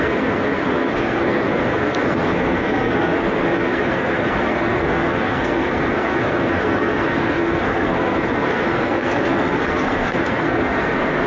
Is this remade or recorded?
remade